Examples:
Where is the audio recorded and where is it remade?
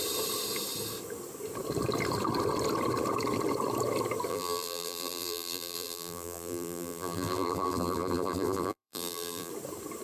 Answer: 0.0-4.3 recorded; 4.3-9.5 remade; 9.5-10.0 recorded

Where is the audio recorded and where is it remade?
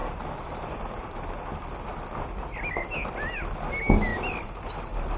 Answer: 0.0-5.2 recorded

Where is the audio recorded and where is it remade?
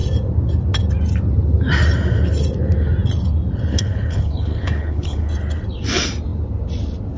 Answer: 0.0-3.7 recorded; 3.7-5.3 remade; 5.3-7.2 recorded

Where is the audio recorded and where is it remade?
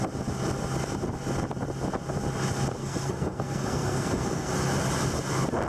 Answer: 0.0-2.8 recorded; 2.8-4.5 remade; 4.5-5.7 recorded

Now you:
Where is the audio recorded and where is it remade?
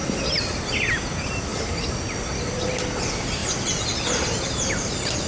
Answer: 0.0-3.4 recorded; 3.4-5.3 remade